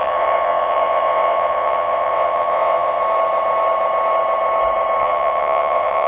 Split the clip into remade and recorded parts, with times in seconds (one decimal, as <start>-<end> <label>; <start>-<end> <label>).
0.0-3.0 remade; 3.0-5.0 recorded; 5.0-6.1 remade